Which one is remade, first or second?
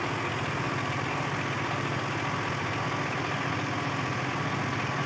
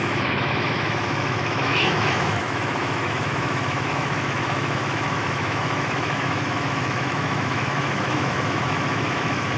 second